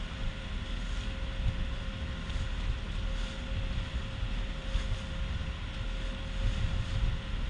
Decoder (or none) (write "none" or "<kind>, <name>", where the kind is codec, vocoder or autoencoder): none